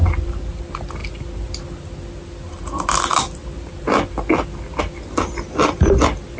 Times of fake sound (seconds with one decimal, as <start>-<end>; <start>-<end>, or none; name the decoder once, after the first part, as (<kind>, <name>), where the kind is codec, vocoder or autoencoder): none